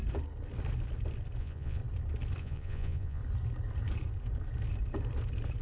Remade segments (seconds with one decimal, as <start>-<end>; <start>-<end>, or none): 1.4-1.8; 2.4-3.2